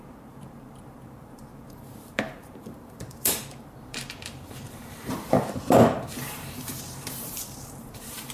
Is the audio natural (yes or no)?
no